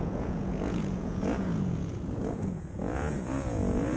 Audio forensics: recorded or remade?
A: remade